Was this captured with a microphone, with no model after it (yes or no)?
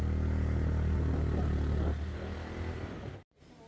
yes